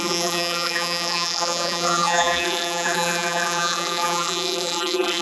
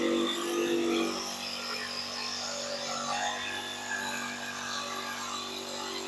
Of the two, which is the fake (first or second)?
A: first